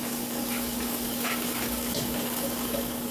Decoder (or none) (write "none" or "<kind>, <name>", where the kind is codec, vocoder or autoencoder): codec, DAC